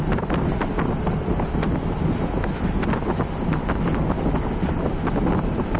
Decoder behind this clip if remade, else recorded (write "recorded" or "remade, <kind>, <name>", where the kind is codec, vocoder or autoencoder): recorded